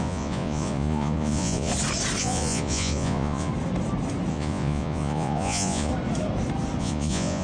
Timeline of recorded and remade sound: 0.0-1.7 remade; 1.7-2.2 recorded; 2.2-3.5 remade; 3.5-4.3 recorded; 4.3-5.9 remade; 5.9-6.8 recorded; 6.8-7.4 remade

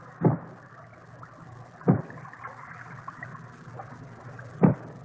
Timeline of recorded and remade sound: 0.0-5.0 recorded